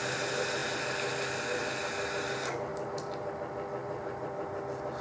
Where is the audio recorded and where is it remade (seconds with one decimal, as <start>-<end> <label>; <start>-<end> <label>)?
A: 0.0-2.7 recorded; 2.7-3.3 remade; 3.3-3.8 recorded; 3.8-4.6 remade; 4.6-5.0 recorded